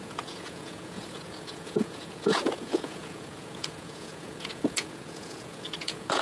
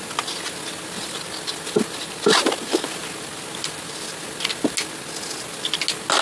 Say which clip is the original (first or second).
second